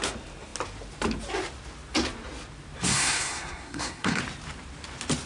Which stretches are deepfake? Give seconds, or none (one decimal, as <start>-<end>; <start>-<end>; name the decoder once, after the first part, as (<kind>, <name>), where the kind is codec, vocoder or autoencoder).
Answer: 2.9-4.2 (codec, SNAC)